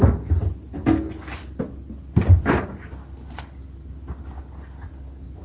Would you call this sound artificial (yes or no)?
no